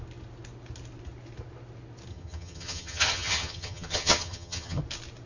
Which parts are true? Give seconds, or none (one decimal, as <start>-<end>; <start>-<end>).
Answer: 0.0-2.1; 4.8-5.3